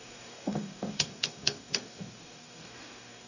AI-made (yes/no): yes